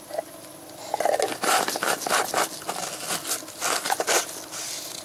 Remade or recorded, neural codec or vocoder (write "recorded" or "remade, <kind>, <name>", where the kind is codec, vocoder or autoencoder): recorded